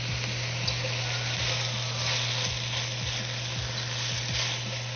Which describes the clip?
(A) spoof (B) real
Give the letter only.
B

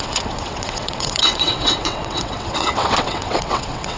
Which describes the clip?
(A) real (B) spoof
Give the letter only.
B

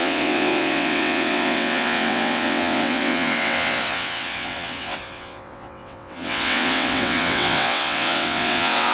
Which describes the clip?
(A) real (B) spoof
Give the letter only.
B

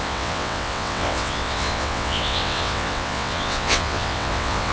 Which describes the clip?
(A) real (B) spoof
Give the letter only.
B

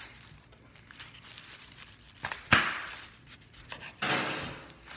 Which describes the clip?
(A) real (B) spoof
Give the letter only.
A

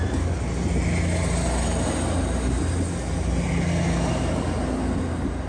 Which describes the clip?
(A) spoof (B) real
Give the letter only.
B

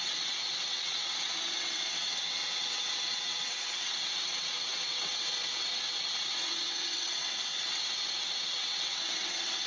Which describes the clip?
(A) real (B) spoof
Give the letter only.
B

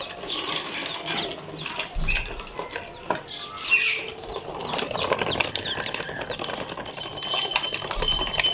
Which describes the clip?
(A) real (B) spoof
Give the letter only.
A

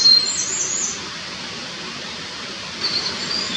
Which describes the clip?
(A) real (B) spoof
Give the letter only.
A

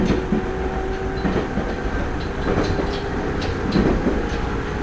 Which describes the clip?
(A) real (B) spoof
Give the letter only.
A